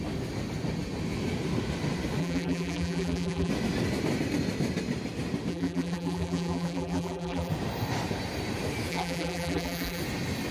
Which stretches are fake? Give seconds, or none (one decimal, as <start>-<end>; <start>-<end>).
2.2-3.5; 5.5-7.5; 8.9-10.0